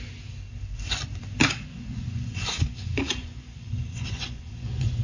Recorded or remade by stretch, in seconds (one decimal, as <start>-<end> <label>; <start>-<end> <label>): 0.0-1.7 recorded; 1.7-5.0 remade

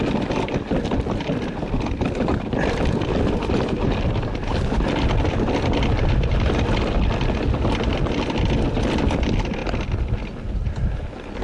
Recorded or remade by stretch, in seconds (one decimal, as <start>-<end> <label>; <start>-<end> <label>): 0.0-11.4 recorded

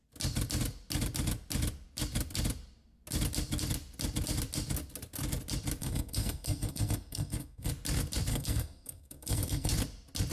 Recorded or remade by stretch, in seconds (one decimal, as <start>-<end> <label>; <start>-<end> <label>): 0.0-5.8 recorded; 5.8-7.7 remade; 7.7-8.3 recorded; 8.3-9.7 remade; 9.7-10.3 recorded